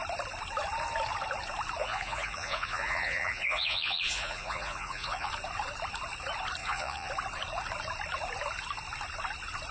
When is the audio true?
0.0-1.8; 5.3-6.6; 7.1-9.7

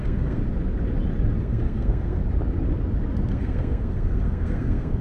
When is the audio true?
0.4-1.4; 2.2-3.3

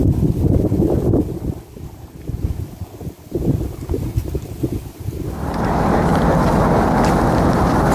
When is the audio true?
0.0-7.9